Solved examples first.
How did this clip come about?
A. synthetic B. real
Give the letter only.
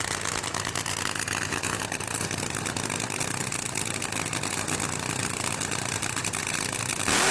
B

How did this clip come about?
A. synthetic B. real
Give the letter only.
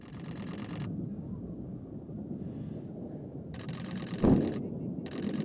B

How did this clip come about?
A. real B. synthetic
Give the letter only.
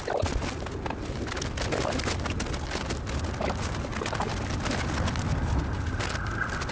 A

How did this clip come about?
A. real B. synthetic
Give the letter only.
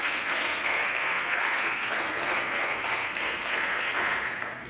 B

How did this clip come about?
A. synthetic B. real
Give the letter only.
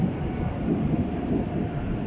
B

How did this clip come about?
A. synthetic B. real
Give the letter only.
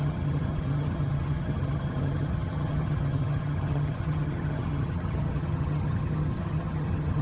A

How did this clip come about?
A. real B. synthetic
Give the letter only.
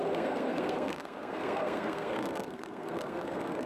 B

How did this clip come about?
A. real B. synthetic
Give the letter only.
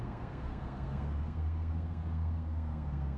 B